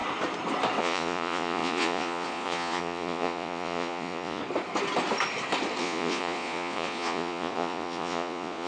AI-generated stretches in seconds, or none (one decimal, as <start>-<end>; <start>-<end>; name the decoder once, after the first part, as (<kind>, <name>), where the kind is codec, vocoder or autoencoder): 0.8-4.4 (vocoder, Vocos); 5.8-8.7